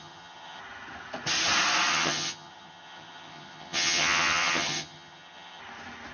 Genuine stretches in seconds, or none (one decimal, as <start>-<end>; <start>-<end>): 0.6-1.9; 5.6-6.1

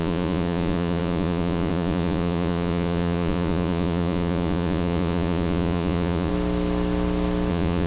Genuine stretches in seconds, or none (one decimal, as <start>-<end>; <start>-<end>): 6.3-7.5

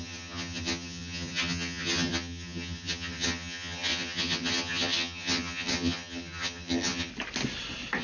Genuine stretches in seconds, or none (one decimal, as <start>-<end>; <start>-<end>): 7.1-8.0

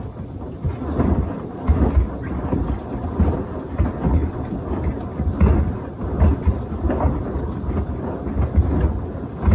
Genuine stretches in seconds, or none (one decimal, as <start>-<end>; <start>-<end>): 0.0-9.5

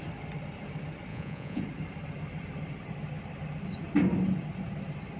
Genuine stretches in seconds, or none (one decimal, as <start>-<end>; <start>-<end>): 0.0-1.1; 1.6-5.2

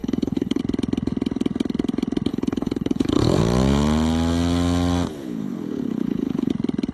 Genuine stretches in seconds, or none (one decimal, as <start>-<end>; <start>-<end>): 0.6-2.3; 3.4-5.1; 6.5-6.9

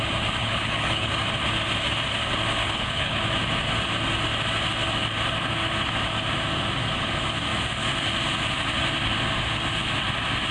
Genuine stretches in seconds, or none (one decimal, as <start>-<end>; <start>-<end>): 0.0-0.4; 1.1-2.6; 3.2-10.5

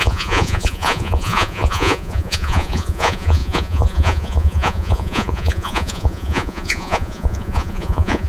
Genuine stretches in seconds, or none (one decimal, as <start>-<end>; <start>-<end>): none